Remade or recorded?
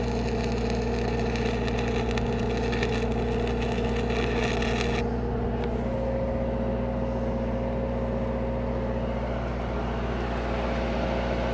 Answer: recorded